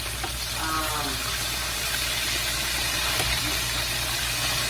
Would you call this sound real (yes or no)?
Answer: yes